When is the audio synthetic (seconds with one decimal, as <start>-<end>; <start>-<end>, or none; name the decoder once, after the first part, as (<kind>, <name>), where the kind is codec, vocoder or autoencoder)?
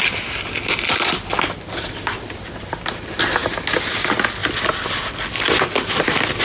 none